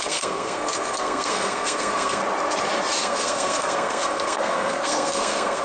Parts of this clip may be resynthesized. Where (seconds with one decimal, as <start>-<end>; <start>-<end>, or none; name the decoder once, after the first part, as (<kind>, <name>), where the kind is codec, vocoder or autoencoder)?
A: 0.0-2.2 (codec, SNAC); 3.0-5.6